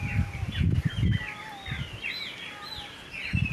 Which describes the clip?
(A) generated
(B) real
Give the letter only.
B